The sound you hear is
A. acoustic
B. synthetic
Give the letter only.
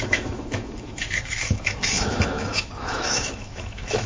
B